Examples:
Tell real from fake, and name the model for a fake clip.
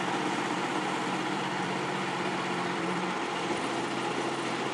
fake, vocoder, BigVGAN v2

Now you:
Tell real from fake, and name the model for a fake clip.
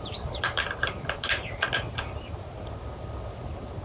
fake, vocoder, BigVGAN v2